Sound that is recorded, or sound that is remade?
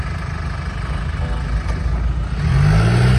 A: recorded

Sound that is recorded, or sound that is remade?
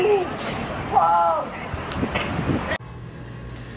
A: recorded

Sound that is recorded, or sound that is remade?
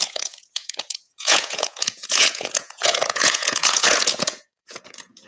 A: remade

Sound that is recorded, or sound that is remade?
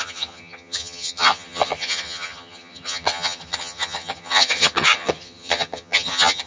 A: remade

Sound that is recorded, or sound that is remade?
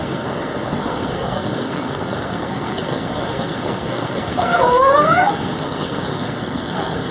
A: remade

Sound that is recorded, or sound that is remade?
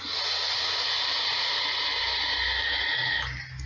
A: recorded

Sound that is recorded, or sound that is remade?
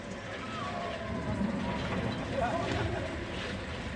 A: recorded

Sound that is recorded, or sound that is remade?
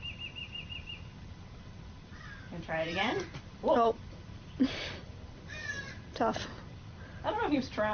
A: remade